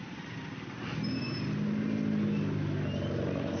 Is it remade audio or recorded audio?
recorded